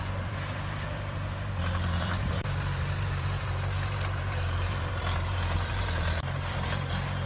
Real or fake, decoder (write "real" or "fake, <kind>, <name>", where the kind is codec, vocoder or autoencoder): fake, vocoder, BigVGAN v2